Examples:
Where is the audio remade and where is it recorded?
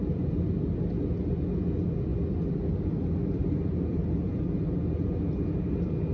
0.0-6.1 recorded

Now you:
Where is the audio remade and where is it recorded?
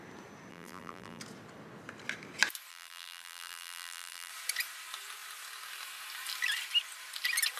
0.0-0.5 recorded; 0.5-1.2 remade; 1.2-2.7 recorded; 2.7-4.3 remade; 4.3-7.6 recorded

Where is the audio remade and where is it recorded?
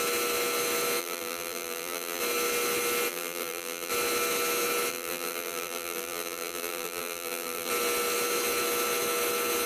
0.0-1.0 recorded; 1.0-2.2 remade; 2.2-3.1 recorded; 3.1-3.9 remade; 3.9-4.9 recorded; 4.9-7.7 remade; 7.7-9.7 recorded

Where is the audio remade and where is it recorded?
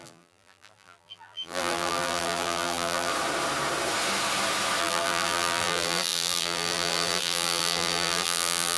0.0-3.1 remade; 3.1-4.8 recorded; 4.8-8.8 remade